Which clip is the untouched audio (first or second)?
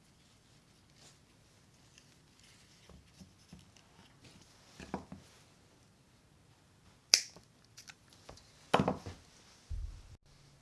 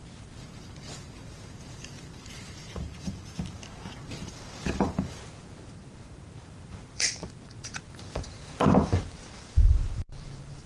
first